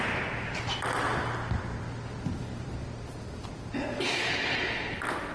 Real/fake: real